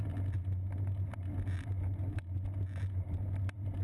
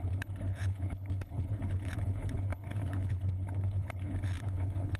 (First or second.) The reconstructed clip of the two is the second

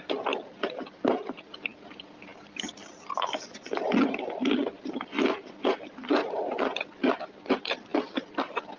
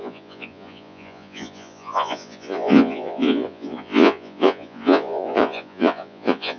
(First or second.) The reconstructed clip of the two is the second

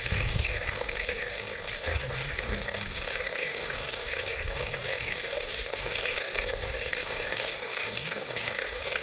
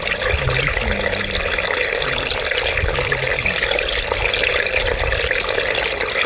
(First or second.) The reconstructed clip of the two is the first